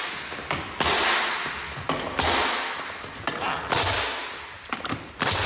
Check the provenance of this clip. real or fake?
real